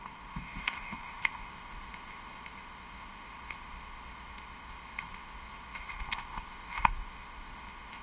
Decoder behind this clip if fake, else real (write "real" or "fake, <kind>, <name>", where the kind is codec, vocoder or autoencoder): fake, codec, ZipCodec